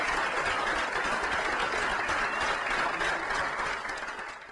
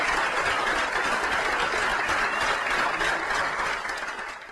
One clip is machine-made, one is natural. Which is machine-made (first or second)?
second